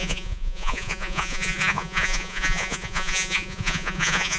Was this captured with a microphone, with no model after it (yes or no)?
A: no